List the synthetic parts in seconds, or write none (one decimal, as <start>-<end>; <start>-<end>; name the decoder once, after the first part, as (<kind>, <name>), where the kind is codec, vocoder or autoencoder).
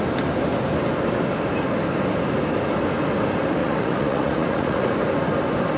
3.6-4.9 (vocoder, Vocos)